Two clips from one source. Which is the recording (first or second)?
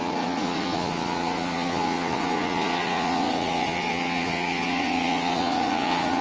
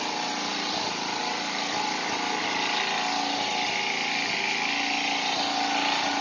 second